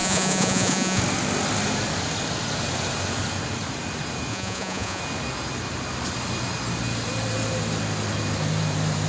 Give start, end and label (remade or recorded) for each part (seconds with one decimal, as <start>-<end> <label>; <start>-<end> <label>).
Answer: 0.0-1.0 remade; 1.0-4.3 recorded; 4.3-5.0 remade; 5.0-9.1 recorded